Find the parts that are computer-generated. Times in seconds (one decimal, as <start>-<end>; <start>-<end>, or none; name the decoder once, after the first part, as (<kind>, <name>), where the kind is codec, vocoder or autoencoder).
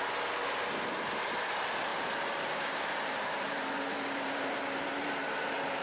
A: 1.9-5.8 (vocoder, BigVGAN v2)